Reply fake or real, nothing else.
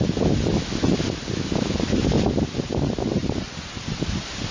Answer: real